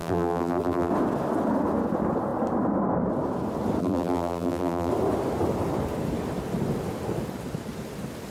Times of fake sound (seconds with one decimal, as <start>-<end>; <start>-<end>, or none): 0.0-0.9; 3.8-4.9